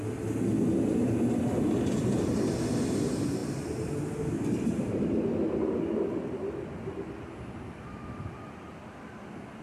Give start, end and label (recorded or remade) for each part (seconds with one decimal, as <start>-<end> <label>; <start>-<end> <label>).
0.0-9.6 recorded

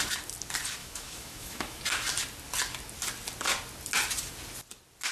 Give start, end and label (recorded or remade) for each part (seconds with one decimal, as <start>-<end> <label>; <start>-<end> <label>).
0.0-0.8 recorded; 0.8-1.8 remade; 1.8-5.1 recorded

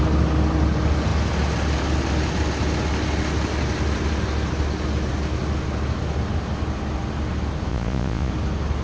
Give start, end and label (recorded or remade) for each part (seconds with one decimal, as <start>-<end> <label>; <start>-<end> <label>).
0.0-7.7 recorded; 7.7-8.3 remade; 8.3-8.8 recorded

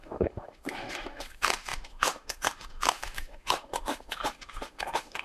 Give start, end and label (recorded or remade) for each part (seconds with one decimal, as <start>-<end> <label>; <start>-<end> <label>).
0.0-5.2 remade

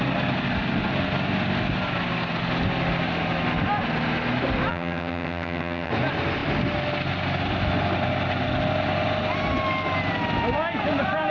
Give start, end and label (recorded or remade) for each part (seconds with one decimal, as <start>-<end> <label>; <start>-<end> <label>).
0.0-4.7 recorded; 4.7-5.9 remade; 5.9-11.3 recorded

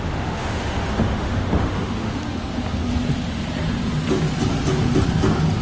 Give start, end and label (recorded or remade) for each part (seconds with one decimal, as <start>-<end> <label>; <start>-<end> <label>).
0.0-2.2 remade; 2.2-5.6 recorded

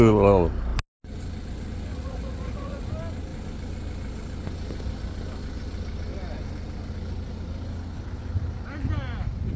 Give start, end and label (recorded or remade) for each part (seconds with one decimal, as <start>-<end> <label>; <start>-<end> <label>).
0.0-1.9 recorded; 1.9-2.9 remade; 2.9-9.6 recorded